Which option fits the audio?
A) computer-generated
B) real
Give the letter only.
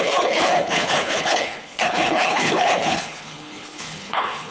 A